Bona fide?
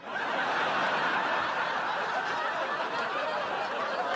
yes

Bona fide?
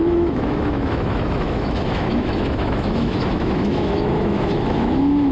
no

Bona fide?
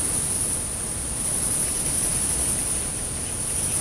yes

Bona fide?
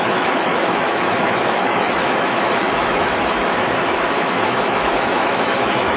no